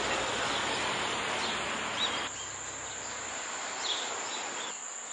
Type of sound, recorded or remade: recorded